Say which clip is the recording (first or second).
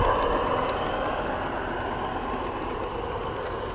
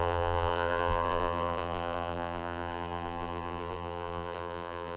first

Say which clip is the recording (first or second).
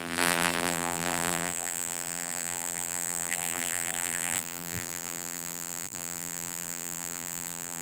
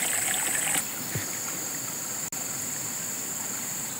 second